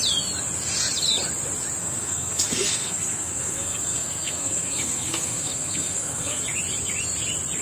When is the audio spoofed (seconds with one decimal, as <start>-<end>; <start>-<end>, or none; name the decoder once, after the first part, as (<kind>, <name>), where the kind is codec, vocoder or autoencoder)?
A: 1.8-6.4 (codec, SNAC)